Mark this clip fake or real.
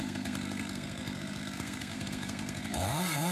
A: fake